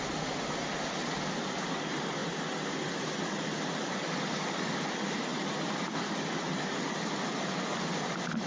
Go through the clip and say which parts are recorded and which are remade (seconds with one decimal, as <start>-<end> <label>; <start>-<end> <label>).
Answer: 0.0-8.5 recorded